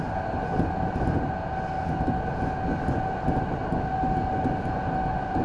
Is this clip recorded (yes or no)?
yes